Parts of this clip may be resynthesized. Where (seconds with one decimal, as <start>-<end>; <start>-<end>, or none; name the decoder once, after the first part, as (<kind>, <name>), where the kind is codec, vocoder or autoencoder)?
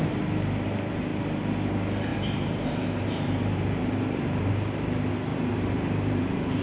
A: 2.1-4.5 (vocoder, BigVGAN v2); 5.3-6.6